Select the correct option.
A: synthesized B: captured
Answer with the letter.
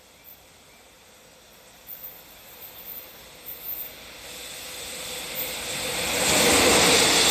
B